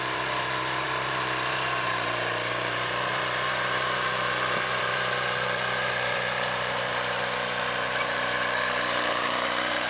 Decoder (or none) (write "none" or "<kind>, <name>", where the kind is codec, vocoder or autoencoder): vocoder, BigVGAN v2